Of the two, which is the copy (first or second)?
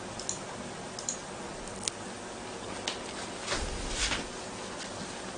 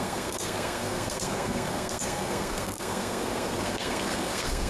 second